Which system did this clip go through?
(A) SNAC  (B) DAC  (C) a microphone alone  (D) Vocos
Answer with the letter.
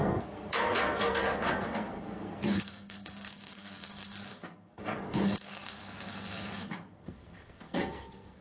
A